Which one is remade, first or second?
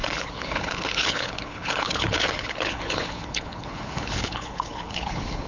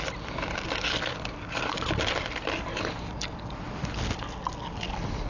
first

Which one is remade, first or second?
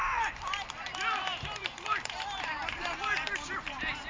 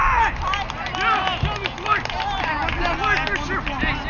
first